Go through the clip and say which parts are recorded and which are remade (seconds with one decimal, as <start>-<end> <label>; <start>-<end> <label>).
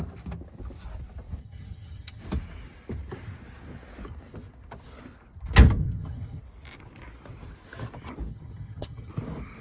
0.0-1.4 recorded; 1.4-2.2 remade; 2.2-5.8 recorded; 5.8-6.4 remade; 6.4-8.3 recorded; 8.3-9.1 remade; 9.1-9.6 recorded